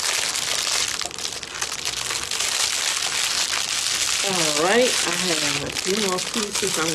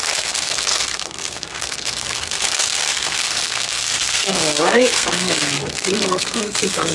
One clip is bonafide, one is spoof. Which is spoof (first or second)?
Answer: second